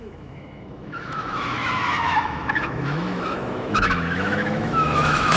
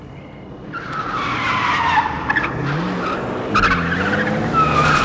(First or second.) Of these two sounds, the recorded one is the second